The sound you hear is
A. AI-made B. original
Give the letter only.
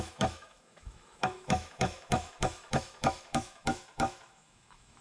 A